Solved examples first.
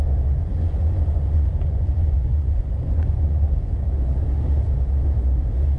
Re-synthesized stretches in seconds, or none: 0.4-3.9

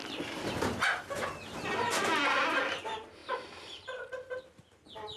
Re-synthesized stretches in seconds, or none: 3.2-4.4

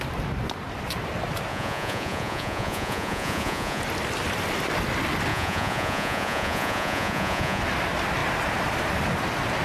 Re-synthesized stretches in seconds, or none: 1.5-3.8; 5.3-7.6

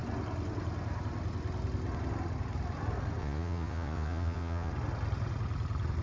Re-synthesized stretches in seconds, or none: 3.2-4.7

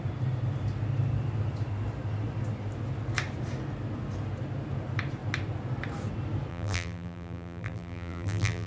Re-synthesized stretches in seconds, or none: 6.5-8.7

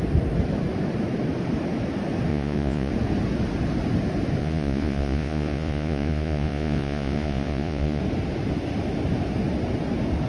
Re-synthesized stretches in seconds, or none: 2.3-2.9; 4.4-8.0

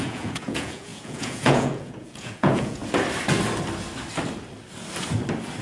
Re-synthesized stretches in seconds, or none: 0.0-2.8

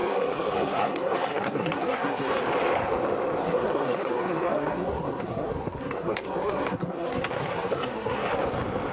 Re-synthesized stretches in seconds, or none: 0.0-2.3; 3.4-8.3